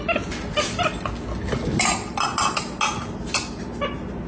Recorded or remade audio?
recorded